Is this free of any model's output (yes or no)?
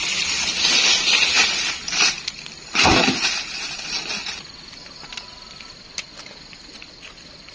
yes